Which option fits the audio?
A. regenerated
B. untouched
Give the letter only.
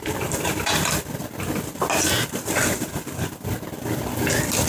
B